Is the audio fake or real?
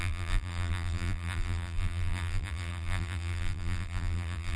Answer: fake